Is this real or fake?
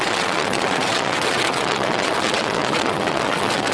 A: fake